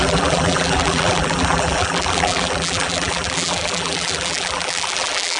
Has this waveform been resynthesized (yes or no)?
yes